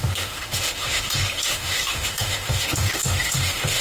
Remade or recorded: remade